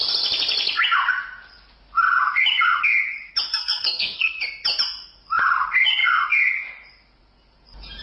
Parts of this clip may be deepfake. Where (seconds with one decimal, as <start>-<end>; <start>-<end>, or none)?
3.5-4.4